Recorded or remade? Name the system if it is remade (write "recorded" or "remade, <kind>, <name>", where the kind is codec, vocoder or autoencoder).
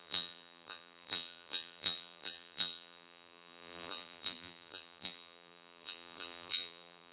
remade, vocoder, BigVGAN v2